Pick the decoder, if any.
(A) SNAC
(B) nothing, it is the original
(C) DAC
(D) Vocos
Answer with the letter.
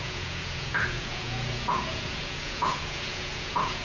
D